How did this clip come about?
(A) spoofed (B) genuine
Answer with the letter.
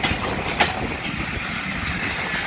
B